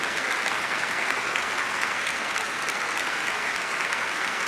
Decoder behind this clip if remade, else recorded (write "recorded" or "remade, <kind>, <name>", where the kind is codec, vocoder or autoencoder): remade, codec, SNAC